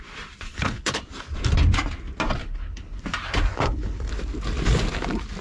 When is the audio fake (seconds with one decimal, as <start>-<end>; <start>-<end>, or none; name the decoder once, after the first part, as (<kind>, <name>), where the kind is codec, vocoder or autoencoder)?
0.5-1.0 (codec, HILCodec); 2.4-3.0; 3.5-4.1